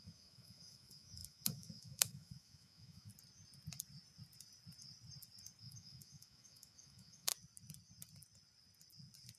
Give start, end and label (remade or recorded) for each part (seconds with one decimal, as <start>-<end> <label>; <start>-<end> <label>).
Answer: 0.0-3.1 remade; 3.1-5.6 recorded; 5.6-7.3 remade; 7.3-9.4 recorded